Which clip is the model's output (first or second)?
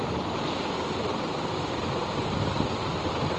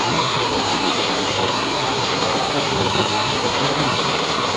second